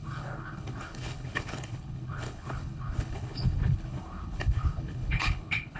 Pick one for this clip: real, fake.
fake